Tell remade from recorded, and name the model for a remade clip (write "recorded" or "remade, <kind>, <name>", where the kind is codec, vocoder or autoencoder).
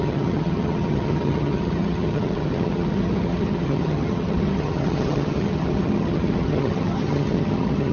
remade, vocoder, HiFi-GAN